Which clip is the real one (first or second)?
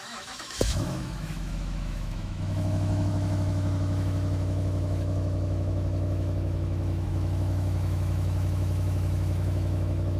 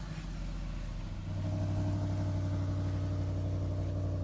second